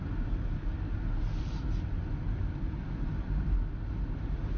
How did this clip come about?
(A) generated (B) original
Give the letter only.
B